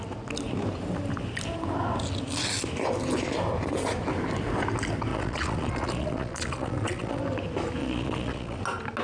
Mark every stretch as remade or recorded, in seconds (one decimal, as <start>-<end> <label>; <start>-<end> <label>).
0.0-5.1 recorded; 5.1-7.2 remade; 7.2-7.8 recorded; 7.8-8.6 remade; 8.6-9.0 recorded